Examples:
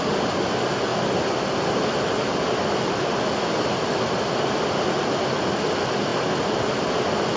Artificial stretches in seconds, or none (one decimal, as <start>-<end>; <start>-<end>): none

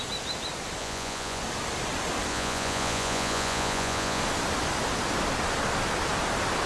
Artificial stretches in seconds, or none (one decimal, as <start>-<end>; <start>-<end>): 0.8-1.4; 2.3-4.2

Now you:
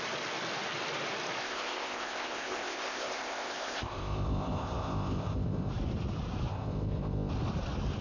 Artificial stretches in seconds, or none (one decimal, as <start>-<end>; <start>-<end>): 1.4-5.7; 6.5-7.3